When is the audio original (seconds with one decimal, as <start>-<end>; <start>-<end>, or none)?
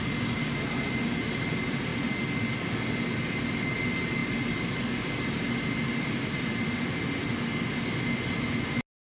0.0-9.1